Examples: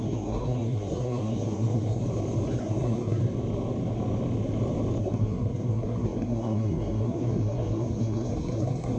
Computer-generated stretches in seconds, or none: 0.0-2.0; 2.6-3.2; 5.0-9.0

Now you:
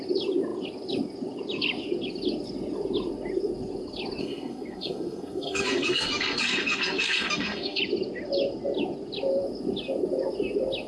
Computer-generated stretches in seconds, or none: 4.2-7.8